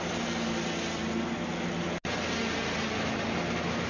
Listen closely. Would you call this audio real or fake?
real